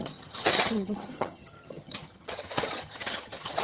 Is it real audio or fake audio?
fake